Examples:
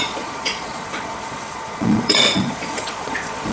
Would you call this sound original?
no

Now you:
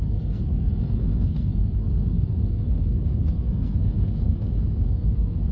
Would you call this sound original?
no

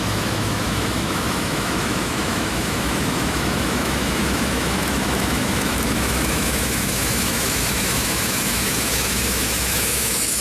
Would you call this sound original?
no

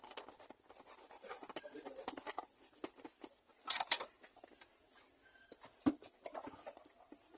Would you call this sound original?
no